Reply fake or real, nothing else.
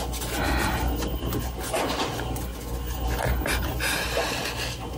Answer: real